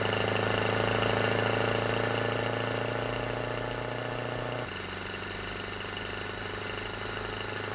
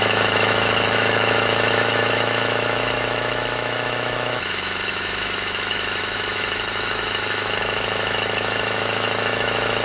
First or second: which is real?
first